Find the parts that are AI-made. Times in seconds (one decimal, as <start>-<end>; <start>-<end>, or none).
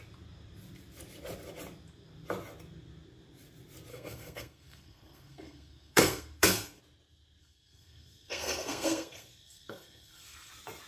3.9-6.8; 7.4-10.5